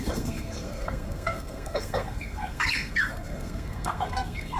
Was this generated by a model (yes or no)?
yes